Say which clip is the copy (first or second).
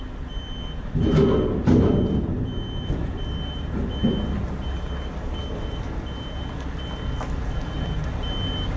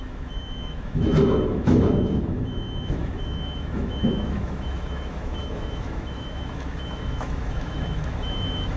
second